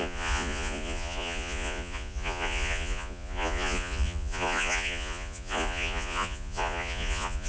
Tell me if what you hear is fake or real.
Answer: fake